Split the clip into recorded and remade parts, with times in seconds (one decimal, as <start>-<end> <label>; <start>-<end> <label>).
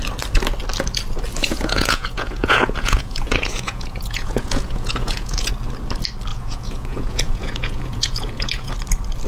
0.0-1.4 recorded; 1.4-5.5 remade; 5.5-6.3 recorded; 6.3-8.7 remade; 8.7-9.3 recorded